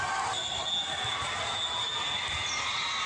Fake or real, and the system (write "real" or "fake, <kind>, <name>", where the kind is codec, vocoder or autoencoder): real